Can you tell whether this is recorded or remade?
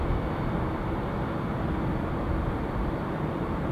recorded